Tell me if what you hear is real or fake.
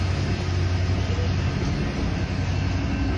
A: real